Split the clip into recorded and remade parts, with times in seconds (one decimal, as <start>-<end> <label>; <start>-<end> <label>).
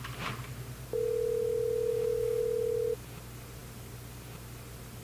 0.0-1.9 recorded; 1.9-2.4 remade; 2.4-5.0 recorded